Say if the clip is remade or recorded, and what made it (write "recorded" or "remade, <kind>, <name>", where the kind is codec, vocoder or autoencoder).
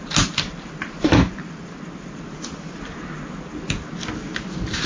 recorded